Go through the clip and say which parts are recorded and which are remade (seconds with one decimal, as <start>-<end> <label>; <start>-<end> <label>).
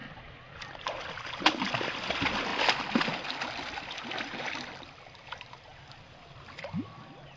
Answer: 0.0-1.7 remade; 1.7-7.4 recorded